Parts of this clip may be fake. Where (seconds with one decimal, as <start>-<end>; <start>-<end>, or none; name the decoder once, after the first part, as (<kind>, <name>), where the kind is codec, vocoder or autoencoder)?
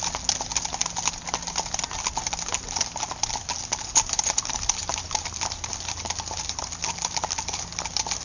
none